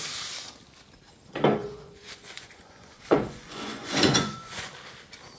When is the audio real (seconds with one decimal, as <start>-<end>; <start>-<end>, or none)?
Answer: 0.0-1.6; 4.7-5.4